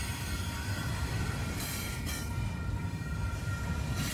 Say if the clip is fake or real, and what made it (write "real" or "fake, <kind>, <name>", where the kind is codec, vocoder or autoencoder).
fake, vocoder, BigVGAN v2